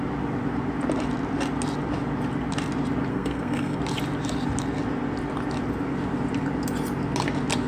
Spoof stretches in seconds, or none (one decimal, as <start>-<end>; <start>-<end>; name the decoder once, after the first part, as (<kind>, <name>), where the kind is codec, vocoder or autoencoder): 3.1-3.8 (codec, SNAC)